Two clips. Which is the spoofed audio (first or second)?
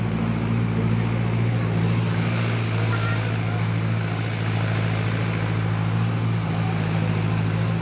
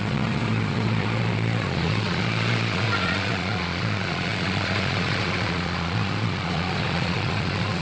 second